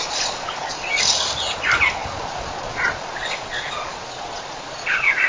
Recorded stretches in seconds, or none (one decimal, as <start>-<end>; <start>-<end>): 1.0-2.0